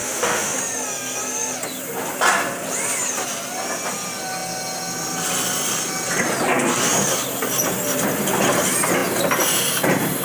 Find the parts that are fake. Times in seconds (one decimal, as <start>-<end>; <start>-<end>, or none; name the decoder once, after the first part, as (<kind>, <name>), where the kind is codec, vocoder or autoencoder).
0.0-0.6 (autoencoder, DAC-VAE)